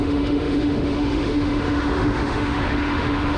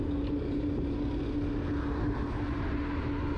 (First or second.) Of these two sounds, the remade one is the first